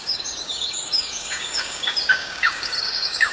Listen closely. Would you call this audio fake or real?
fake